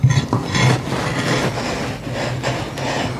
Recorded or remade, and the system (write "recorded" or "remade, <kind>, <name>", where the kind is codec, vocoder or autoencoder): recorded